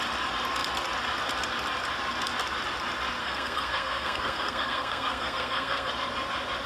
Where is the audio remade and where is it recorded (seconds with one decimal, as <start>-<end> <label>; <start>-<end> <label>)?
0.0-3.2 recorded; 3.2-5.9 remade; 5.9-6.7 recorded